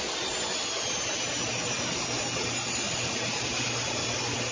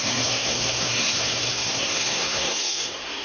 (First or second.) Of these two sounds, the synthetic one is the second